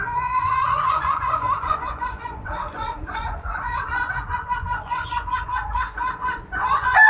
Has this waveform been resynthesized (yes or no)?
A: yes